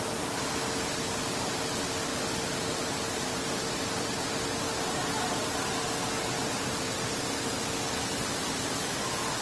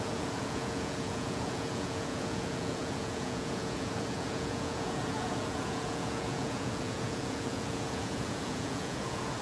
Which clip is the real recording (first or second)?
first